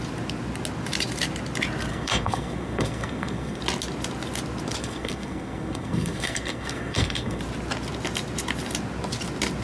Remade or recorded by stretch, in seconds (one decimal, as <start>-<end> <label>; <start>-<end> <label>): 0.0-1.9 recorded; 1.9-3.6 remade; 3.6-4.8 recorded; 4.8-7.4 remade; 7.4-9.6 recorded